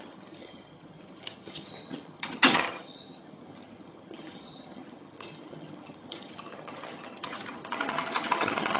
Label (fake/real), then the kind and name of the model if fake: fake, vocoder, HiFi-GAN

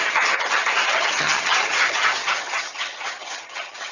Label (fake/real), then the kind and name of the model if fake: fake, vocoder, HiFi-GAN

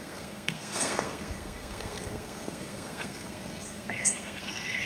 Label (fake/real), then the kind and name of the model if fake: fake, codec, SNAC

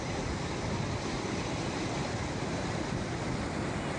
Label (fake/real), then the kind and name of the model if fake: real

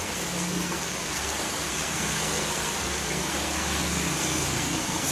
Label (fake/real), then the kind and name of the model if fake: fake, codec, SNAC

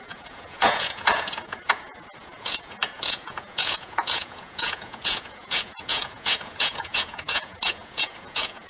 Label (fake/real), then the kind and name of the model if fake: fake, vocoder, Vocos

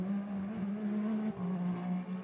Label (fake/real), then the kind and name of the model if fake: real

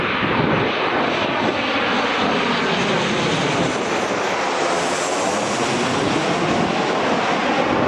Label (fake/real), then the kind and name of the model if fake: real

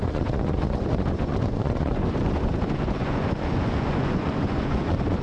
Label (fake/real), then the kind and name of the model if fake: fake, vocoder, Vocos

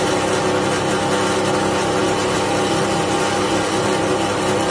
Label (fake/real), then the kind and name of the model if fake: real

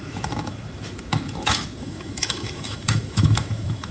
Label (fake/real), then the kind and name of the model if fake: fake, autoencoder, DAC-VAE